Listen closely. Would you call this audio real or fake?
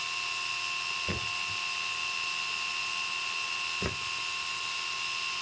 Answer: real